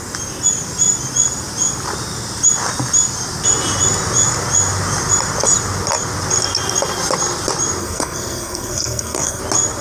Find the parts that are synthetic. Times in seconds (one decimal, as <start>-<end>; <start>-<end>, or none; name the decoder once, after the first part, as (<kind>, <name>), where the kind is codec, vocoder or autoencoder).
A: 7.8-9.4 (codec, SNAC)